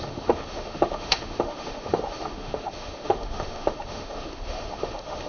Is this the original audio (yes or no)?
no